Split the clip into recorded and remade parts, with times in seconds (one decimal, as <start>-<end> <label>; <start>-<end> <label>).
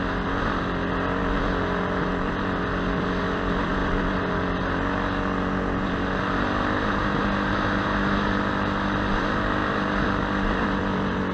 0.0-11.3 recorded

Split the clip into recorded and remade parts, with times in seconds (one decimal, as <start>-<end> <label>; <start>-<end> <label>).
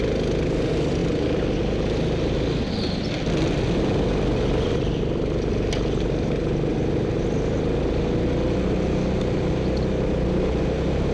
0.0-11.1 recorded